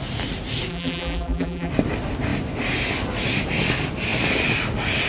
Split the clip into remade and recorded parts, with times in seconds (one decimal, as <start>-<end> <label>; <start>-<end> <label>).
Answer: 0.0-0.7 recorded; 0.7-1.7 remade; 1.7-5.1 recorded